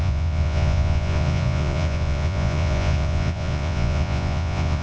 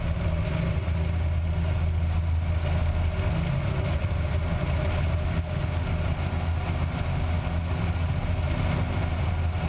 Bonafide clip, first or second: second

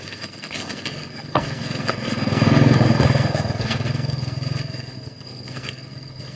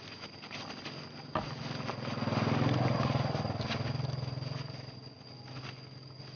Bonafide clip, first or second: second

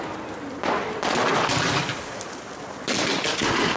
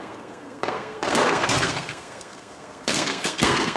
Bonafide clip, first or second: first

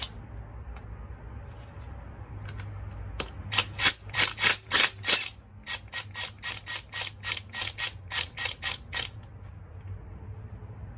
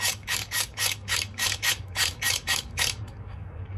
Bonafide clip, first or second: first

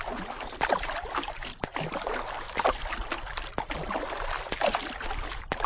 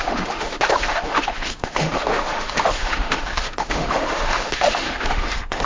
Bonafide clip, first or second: first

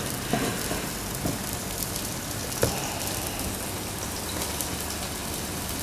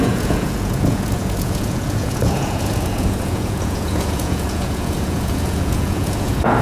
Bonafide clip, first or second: first